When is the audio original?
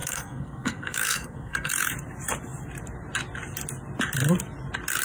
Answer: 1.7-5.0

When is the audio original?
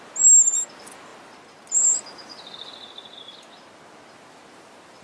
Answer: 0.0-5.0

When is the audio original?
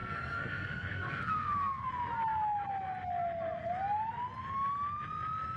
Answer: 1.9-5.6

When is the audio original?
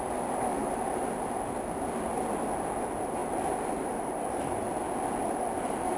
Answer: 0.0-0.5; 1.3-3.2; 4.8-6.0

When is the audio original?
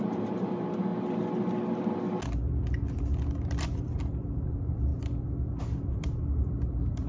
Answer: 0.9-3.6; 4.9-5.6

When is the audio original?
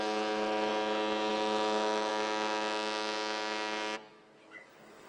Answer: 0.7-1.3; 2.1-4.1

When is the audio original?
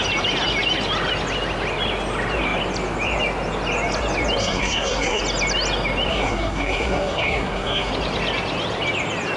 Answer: 0.0-4.4; 5.2-6.1; 7.9-9.4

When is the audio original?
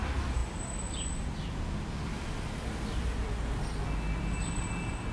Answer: 0.0-5.1